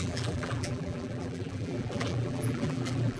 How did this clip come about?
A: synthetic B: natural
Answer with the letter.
A